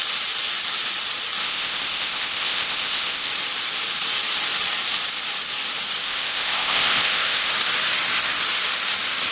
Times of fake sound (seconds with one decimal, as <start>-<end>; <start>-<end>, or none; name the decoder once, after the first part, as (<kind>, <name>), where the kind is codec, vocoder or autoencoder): 1.4-3.3 (codec, ZipCodec); 6.0-7.5